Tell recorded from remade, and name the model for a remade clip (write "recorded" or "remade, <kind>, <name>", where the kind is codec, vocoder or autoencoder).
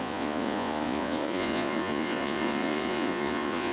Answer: remade, vocoder, Vocos